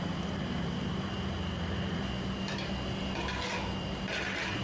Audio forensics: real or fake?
real